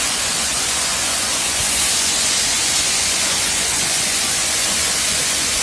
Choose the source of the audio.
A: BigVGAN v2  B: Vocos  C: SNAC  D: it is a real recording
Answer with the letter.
B